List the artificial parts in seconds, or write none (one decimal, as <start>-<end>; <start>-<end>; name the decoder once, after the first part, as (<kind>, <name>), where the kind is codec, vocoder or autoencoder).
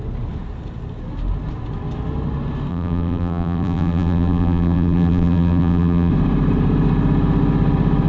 2.7-6.1 (vocoder, BigVGAN v2)